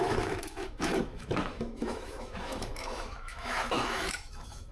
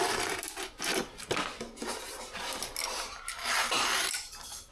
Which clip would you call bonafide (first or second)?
second